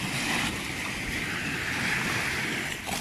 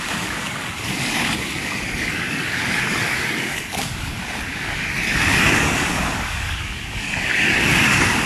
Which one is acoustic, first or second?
first